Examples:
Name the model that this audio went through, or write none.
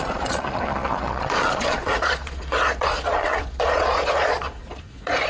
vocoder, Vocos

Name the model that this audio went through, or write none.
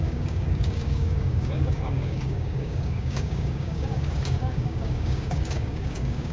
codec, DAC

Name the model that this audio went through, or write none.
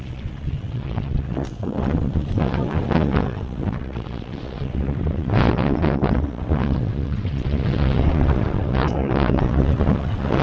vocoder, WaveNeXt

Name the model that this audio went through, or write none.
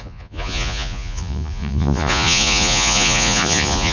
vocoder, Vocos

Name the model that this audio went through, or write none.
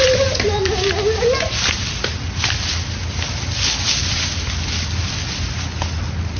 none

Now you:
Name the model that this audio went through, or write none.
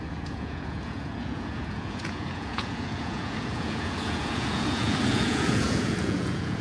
vocoder, Vocos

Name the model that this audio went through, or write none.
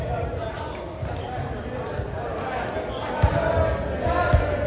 none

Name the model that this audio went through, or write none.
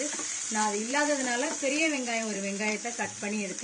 vocoder, BigVGAN v2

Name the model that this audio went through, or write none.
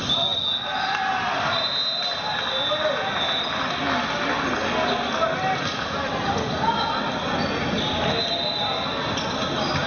none